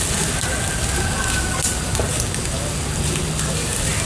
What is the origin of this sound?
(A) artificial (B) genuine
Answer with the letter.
B